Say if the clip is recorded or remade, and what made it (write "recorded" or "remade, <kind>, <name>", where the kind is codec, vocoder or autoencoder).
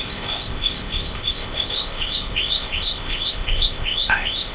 remade, codec, ZipCodec